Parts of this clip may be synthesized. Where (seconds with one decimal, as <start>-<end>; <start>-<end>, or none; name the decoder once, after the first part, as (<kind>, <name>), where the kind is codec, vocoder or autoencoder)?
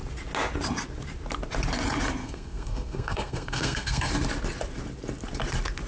2.2-4.1 (codec, SNAC)